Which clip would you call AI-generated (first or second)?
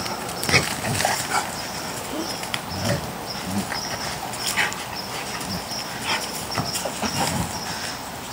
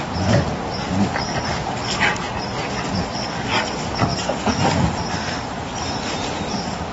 second